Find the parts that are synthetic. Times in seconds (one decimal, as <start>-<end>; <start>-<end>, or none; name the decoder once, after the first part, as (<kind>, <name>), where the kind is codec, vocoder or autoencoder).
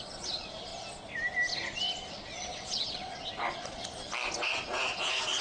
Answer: 0.0-0.7 (vocoder, Vocos); 2.1-3.8; 4.4-5.4